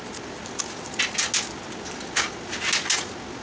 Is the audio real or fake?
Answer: real